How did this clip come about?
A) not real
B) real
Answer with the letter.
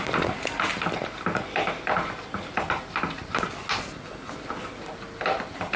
B